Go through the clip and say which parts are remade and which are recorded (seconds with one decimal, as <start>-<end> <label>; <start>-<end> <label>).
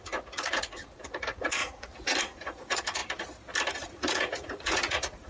0.0-3.0 remade; 3.0-3.7 recorded; 3.7-5.3 remade